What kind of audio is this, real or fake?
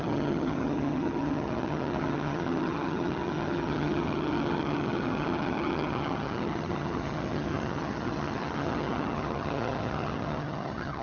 fake